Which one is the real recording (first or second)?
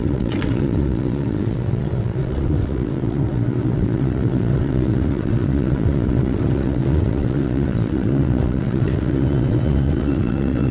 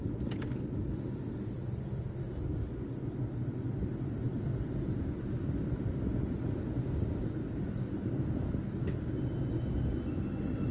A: second